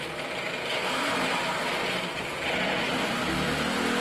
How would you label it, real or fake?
real